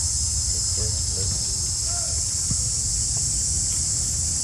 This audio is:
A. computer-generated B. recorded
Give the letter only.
B